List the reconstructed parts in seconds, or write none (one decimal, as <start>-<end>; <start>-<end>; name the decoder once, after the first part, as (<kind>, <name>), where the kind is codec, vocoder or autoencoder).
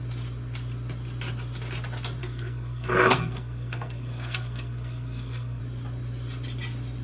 2.2-5.6 (codec, SNAC)